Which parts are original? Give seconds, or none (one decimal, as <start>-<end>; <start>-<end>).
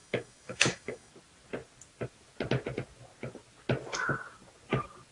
1.1-5.1